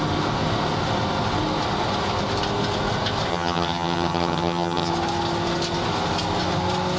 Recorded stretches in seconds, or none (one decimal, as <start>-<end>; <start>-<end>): 0.0-3.3; 4.9-7.0